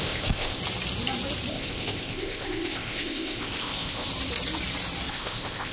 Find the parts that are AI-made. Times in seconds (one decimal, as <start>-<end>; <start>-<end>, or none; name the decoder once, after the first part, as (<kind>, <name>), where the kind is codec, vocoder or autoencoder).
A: 0.0-0.6 (codec, ZipCodec); 1.5-4.1; 5.1-5.7